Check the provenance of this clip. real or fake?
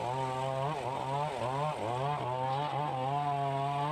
real